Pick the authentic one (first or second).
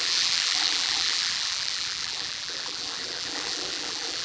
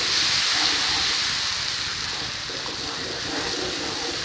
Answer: second